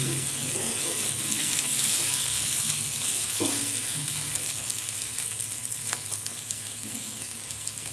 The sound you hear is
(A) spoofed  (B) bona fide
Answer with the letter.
A